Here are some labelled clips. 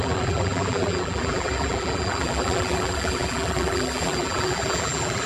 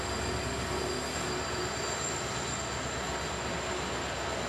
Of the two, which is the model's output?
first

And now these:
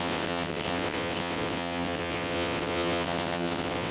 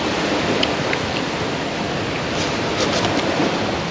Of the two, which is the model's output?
first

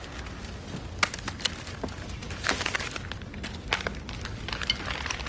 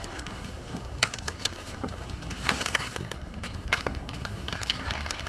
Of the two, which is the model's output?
second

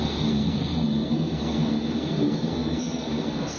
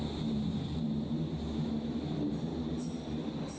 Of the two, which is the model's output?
first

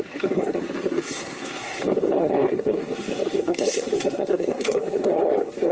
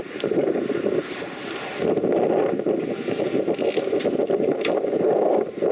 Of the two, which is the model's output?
first